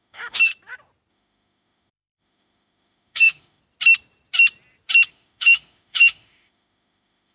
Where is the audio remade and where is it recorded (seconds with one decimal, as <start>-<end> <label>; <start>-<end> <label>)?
0.0-0.5 remade; 0.5-1.1 recorded; 1.1-3.6 remade; 3.6-5.1 recorded; 5.1-7.3 remade

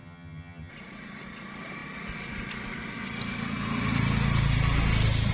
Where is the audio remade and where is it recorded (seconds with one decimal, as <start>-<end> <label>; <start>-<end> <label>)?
0.0-0.7 remade; 0.7-5.3 recorded